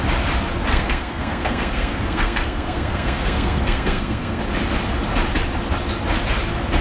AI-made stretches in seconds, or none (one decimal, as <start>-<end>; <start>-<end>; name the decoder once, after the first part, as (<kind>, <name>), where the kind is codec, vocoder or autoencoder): 0.7-4.4 (codec, SNAC)